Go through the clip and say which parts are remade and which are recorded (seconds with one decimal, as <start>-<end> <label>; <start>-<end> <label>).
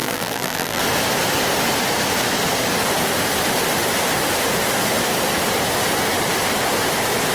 0.0-0.8 remade; 0.8-7.3 recorded